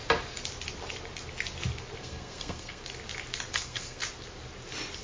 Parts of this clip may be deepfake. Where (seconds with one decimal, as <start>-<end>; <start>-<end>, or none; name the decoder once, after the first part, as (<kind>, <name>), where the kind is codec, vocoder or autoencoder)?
2.0-2.8 (codec, SNAC); 3.5-4.0